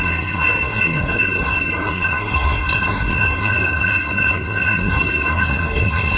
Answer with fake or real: fake